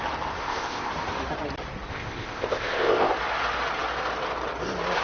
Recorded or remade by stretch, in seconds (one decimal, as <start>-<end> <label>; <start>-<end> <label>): 0.0-0.4 recorded; 0.4-0.9 remade; 0.9-1.9 recorded; 1.9-3.1 remade; 3.1-5.0 recorded